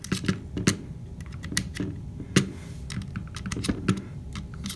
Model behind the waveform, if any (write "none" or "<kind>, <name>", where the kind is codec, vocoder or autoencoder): none